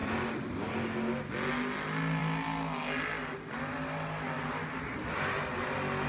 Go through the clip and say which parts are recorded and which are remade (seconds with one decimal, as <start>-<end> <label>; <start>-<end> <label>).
0.0-6.1 recorded